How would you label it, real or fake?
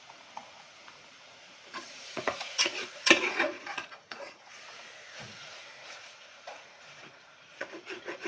fake